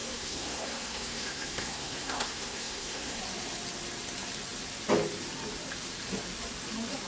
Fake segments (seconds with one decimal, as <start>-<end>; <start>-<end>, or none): 0.0-3.2